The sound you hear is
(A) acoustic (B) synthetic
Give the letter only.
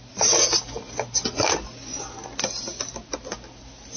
A